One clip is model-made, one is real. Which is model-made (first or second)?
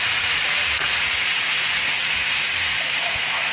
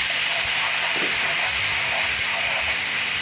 first